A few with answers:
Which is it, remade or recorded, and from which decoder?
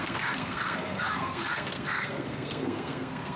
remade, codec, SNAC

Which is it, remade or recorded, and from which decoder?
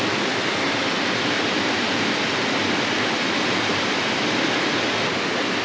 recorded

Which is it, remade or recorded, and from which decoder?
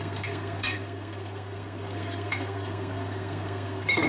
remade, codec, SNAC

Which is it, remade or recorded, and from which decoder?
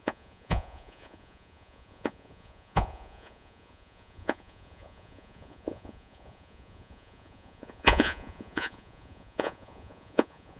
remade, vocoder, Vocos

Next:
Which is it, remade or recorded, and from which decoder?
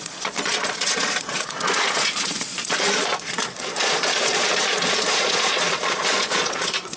remade, vocoder, Vocos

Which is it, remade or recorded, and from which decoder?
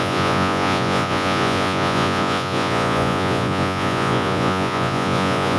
remade, vocoder, Vocos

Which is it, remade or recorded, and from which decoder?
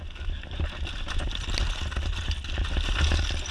recorded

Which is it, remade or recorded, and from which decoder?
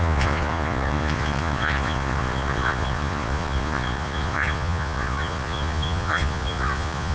remade, vocoder, Vocos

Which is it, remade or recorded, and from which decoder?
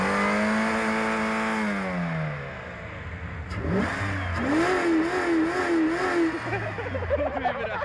recorded